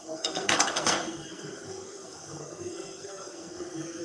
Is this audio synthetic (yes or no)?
yes